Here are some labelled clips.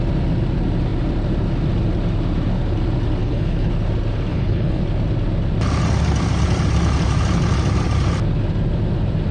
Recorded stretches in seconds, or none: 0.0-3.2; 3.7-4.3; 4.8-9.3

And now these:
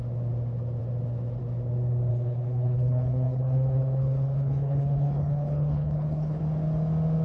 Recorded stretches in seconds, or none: 0.0-2.1; 6.4-7.2